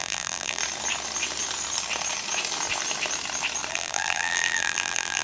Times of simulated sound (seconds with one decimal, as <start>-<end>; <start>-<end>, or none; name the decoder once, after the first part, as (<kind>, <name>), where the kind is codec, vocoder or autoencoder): 0.0-0.6 (vocoder, BigVGAN v2); 3.7-5.2